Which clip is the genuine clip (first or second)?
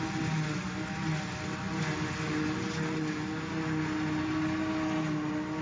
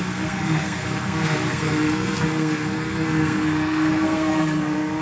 first